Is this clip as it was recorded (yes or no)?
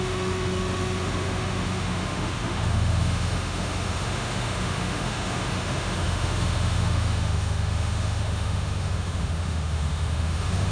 no